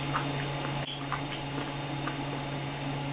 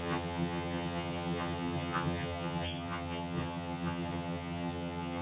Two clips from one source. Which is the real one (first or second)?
first